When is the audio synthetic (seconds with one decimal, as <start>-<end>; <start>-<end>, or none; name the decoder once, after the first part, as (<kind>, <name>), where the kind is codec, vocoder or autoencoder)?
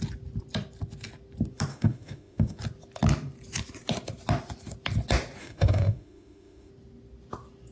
1.7-2.6 (autoencoder, DAC-VAE); 5.4-6.7